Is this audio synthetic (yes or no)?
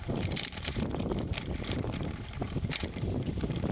yes